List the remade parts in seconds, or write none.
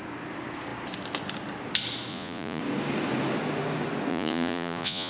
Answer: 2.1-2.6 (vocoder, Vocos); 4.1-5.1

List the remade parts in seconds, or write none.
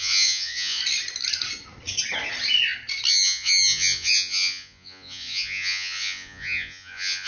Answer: 0.0-0.8 (vocoder, Vocos); 3.1-7.3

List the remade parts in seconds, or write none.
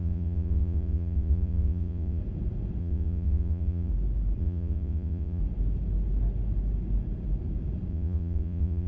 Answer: 0.0-2.2 (vocoder, Vocos); 2.8-3.9; 4.4-5.4; 7.9-8.9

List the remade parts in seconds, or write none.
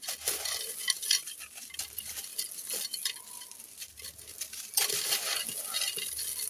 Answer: none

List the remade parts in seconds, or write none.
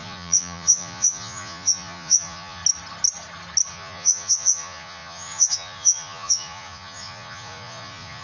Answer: 0.0-2.6 (vocoder, Vocos); 3.7-8.2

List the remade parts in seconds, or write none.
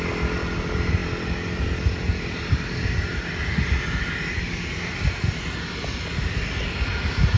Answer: none